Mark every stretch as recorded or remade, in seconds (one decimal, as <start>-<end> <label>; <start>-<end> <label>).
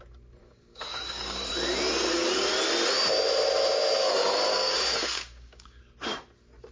0.0-0.4 recorded; 0.4-1.5 remade; 1.5-4.5 recorded; 4.5-5.8 remade; 5.8-6.7 recorded